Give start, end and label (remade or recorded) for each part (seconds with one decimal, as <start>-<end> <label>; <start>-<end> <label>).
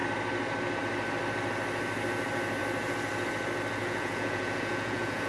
0.0-3.8 recorded; 3.8-5.3 remade